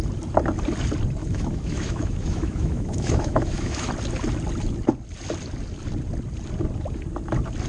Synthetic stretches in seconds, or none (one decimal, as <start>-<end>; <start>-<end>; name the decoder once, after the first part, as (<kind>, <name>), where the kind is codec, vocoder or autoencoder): 1.2-3.9 (autoencoder, DAC-VAE)